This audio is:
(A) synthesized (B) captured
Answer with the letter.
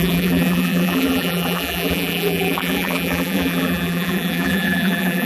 A